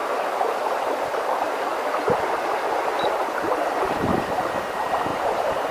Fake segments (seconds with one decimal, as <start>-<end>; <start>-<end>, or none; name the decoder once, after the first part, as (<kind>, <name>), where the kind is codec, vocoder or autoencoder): 5.1-5.7 (vocoder, BigVGAN v2)